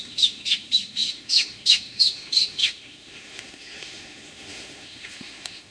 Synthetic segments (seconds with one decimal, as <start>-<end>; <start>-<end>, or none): 0.0-5.7